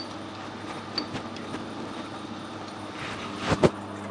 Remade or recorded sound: recorded